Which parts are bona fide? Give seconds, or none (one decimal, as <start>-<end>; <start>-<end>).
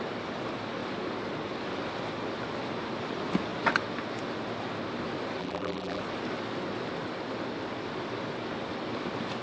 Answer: 0.0-5.4; 6.0-9.4